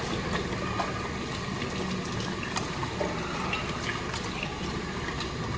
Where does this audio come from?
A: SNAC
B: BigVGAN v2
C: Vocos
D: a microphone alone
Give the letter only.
D